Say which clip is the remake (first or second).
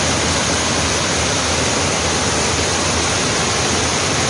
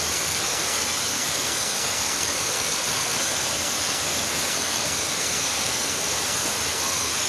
second